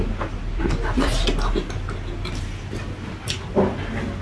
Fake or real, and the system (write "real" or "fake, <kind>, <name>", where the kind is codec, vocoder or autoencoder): real